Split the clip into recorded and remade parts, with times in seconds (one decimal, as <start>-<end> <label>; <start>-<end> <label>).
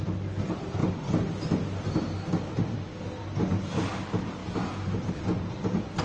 0.0-6.0 recorded